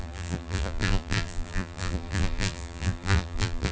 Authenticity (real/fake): fake